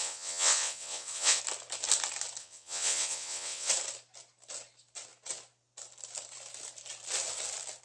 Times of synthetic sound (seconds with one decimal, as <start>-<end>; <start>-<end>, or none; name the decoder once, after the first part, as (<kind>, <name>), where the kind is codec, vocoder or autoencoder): 0.0-1.4 (vocoder, WaveNeXt); 2.4-3.7